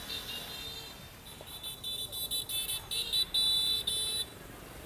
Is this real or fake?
real